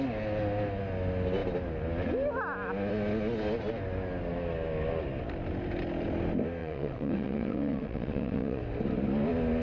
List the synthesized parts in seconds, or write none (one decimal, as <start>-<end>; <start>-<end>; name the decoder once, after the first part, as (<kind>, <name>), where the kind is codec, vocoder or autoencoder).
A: 6.6-8.6 (vocoder, WaveNeXt)